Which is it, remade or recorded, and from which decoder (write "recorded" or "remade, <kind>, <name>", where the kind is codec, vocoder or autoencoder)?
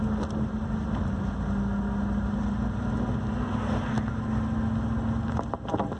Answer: recorded